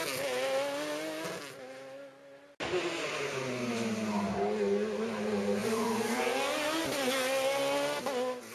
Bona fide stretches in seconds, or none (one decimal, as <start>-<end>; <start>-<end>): 0.0-5.6; 6.2-8.5